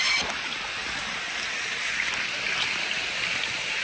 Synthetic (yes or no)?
no